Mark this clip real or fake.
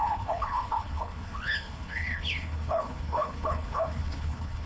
fake